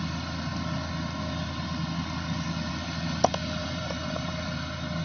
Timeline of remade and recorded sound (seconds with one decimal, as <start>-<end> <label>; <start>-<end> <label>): 0.0-3.6 recorded; 3.6-4.4 remade; 4.4-5.0 recorded